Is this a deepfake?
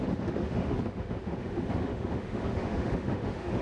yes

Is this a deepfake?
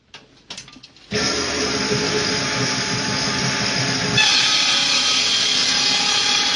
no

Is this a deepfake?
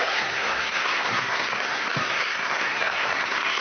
yes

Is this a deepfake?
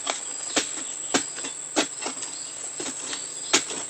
no